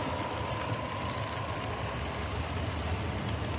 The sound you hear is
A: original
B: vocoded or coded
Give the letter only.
A